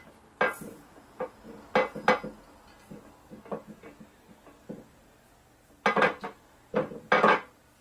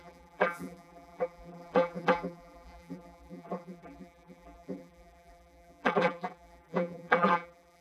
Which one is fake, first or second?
second